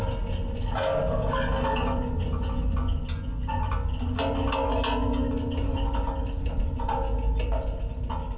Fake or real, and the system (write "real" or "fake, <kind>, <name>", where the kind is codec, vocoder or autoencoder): real